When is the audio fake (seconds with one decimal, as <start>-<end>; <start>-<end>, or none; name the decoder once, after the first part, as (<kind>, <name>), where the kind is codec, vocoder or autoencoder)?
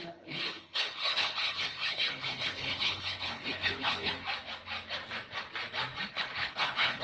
0.0-4.1 (codec, HILCodec); 6.1-7.0